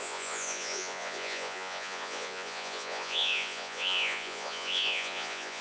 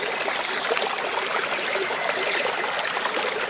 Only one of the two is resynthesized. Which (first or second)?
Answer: first